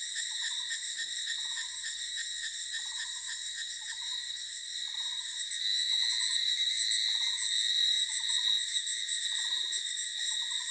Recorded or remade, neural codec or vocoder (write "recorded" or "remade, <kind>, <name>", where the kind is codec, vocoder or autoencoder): recorded